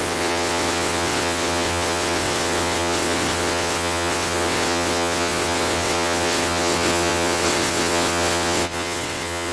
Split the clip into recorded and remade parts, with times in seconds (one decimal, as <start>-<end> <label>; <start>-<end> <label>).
0.0-9.5 remade